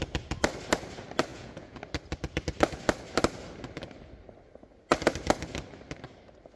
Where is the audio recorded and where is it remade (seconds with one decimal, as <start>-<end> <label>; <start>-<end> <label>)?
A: 0.0-1.3 recorded; 1.3-1.8 remade; 1.8-6.6 recorded